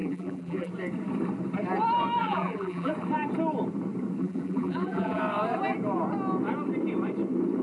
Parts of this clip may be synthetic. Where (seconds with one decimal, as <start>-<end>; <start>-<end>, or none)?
0.0-0.7; 2.2-2.9; 4.2-5.2